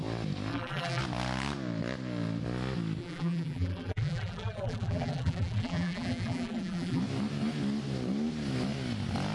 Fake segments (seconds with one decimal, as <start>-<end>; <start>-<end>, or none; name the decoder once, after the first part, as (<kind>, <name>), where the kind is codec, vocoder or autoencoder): 0.5-1.0 (vocoder, BigVGAN v2); 3.0-7.0